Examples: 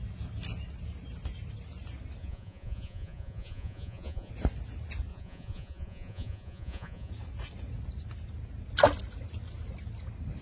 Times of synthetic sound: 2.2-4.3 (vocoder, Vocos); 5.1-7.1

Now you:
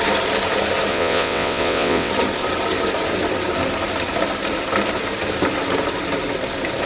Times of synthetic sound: 0.9-2.1 (vocoder, WaveNeXt)

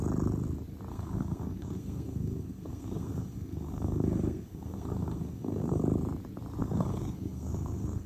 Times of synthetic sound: 0.9-5.8 (codec, SNAC); 6.6-8.1

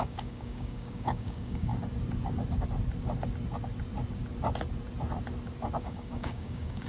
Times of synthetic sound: 0.0-1.7 (codec, DAC); 5.8-6.9

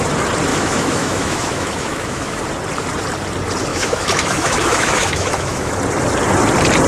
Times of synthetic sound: 0.5-2.4 (autoencoder, DAC-VAE); 3.7-5.8